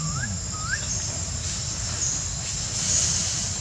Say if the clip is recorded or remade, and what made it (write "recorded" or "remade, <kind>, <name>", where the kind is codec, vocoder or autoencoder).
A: recorded